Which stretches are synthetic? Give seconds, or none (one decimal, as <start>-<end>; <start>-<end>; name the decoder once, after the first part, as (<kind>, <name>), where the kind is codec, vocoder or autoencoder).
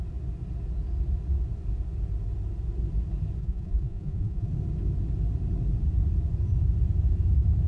3.4-4.5 (vocoder, Vocos)